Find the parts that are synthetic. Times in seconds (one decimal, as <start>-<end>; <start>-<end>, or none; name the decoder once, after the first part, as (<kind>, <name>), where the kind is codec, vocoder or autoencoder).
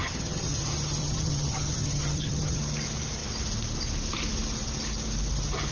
0.0-0.6 (vocoder, HiFi-GAN); 1.0-2.6